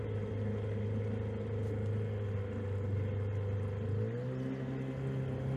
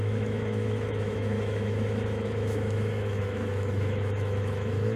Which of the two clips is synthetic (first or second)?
second